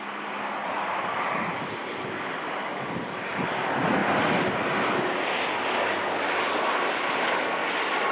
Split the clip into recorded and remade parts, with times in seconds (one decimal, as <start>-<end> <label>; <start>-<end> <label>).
0.0-0.6 recorded; 0.6-1.9 remade; 1.9-2.7 recorded; 2.7-3.4 remade; 3.4-8.1 recorded

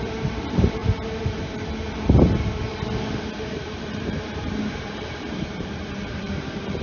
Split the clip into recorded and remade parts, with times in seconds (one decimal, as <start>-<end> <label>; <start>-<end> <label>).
0.0-0.8 remade; 0.8-3.8 recorded; 3.8-6.8 remade

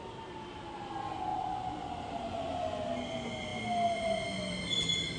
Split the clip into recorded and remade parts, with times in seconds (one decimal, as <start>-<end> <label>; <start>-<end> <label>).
0.0-1.3 recorded; 1.3-2.5 remade; 2.5-5.2 recorded

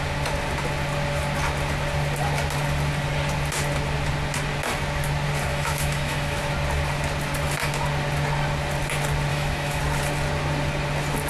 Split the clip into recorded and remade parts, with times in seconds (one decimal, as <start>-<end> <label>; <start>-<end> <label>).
0.0-5.5 recorded; 5.5-6.4 remade; 6.4-9.3 recorded; 9.3-9.8 remade; 9.8-11.3 recorded

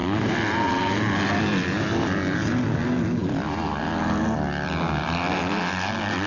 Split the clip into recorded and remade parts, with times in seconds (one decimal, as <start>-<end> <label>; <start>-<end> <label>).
0.0-6.3 recorded

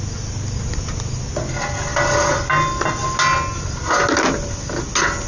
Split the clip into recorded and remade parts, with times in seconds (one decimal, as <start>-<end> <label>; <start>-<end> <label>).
0.0-5.3 recorded

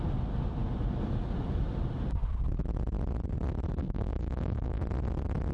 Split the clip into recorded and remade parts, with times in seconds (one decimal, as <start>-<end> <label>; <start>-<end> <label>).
0.0-3.8 recorded; 3.8-4.8 remade; 4.8-5.5 recorded